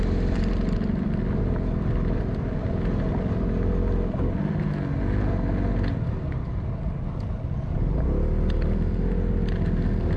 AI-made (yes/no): no